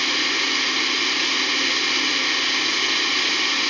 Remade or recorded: recorded